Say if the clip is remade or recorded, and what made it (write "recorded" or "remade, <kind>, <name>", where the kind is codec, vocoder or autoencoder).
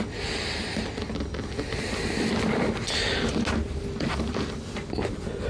recorded